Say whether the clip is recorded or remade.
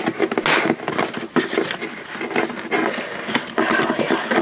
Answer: recorded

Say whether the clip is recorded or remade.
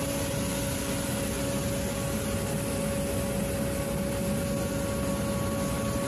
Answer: recorded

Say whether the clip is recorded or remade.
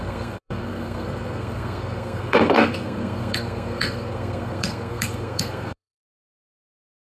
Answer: remade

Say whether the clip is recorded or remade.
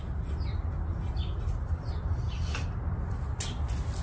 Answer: recorded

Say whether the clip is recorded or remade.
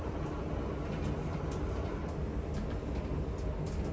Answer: recorded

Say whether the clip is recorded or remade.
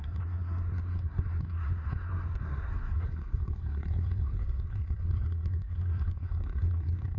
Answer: remade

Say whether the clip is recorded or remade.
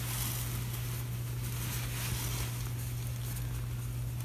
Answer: recorded